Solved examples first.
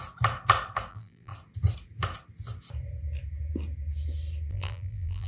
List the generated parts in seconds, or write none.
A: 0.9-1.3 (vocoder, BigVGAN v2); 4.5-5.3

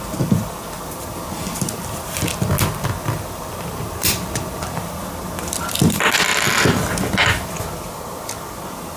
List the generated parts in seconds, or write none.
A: 0.0-5.0 (vocoder, BigVGAN v2); 5.7-6.3

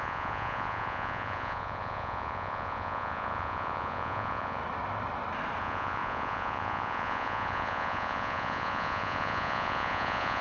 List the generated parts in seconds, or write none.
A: 0.0-4.6 (vocoder, Vocos); 5.6-10.4

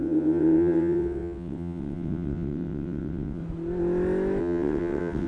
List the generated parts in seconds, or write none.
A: 0.0-3.4 (vocoder, WaveNeXt); 4.4-5.3

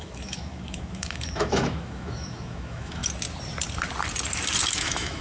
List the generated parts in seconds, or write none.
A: 0.0-3.0 (autoencoder, DAC-VAE); 4.7-5.2

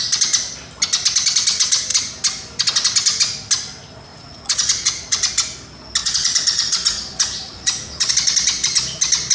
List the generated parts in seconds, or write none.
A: 4.1-5.3 (vocoder, Vocos); 6.0-8.1

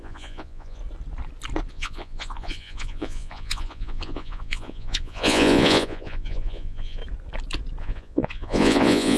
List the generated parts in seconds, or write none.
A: 0.0-0.8 (vocoder, Vocos); 1.7-7.0; 7.8-9.2

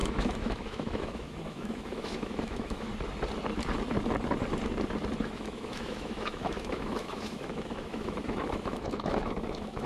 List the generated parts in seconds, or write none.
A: 0.0-2.9 (autoencoder, DAC-VAE); 5.2-9.9